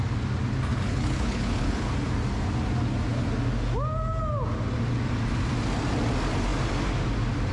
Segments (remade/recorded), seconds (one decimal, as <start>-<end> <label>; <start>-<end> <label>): 0.0-0.7 recorded; 0.7-1.9 remade; 1.9-7.5 recorded